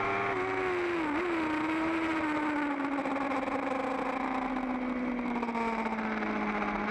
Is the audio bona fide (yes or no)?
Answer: yes